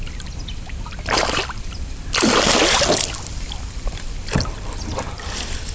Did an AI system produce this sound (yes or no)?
no